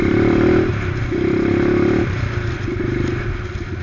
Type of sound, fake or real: real